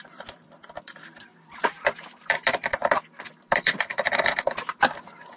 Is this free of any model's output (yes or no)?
no